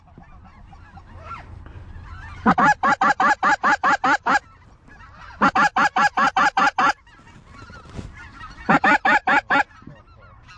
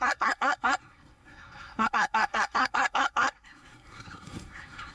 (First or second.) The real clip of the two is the first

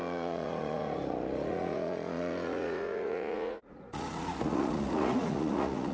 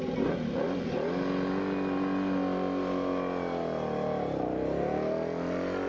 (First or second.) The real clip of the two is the second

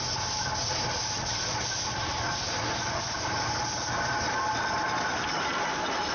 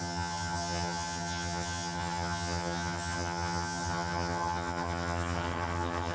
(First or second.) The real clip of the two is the first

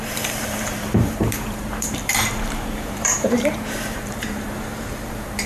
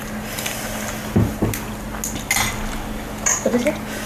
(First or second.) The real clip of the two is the second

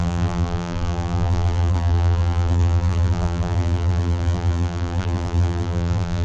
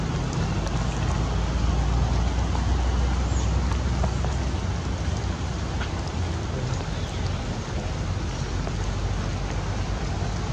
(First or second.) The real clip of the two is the second